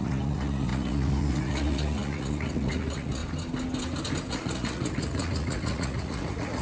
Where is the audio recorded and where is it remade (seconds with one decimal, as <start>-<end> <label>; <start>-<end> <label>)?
0.0-3.2 remade; 3.2-4.3 recorded; 4.3-6.6 remade